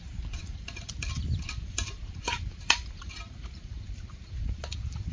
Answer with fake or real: fake